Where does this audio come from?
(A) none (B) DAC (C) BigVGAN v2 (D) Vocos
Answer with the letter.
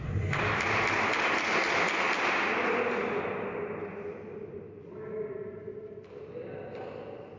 A